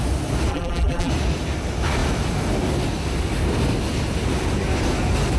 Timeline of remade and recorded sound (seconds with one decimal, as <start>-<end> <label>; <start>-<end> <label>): 0.0-0.5 recorded; 0.5-1.1 remade; 1.1-5.4 recorded